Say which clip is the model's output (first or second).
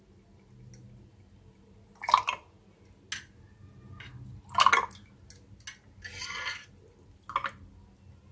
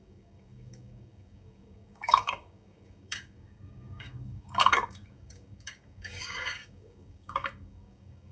second